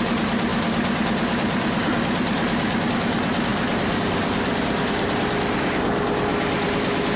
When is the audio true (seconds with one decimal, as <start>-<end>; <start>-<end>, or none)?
0.0-0.5; 2.9-3.5; 5.3-7.2